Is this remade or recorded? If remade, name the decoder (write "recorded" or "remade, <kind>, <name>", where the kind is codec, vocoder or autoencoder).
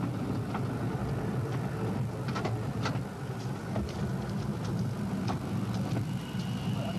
remade, vocoder, BigVGAN v2